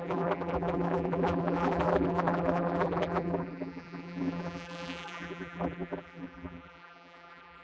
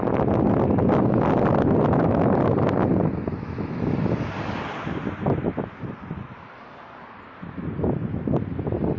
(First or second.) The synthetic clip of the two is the first